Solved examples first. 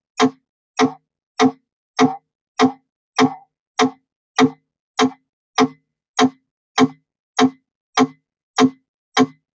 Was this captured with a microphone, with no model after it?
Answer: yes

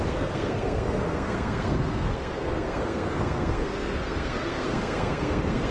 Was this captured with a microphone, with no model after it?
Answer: no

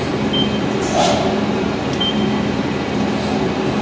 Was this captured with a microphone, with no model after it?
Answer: yes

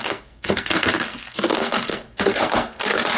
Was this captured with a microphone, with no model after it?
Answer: no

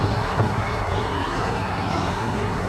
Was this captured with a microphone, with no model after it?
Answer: no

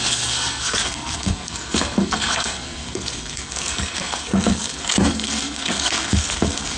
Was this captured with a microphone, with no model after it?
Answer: no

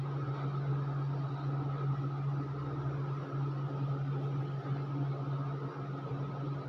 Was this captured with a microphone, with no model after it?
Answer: yes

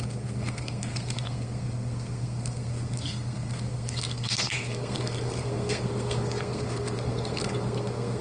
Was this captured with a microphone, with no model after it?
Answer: no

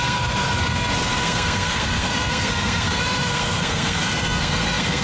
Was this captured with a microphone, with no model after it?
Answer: no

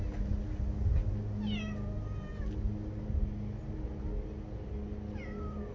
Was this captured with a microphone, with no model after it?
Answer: yes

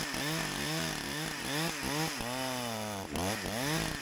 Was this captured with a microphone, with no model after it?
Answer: yes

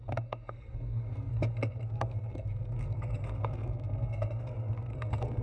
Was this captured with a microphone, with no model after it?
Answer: no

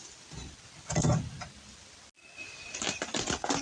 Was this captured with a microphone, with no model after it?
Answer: yes